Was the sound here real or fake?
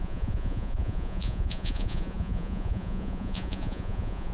fake